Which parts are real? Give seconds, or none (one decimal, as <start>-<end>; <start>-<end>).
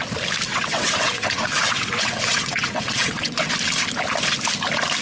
0.0-0.5; 3.5-5.0